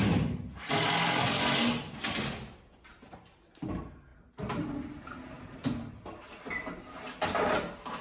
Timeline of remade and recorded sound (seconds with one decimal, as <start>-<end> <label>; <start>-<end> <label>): 0.0-8.0 recorded